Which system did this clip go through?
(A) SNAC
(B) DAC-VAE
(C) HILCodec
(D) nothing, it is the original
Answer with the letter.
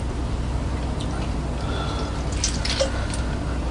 D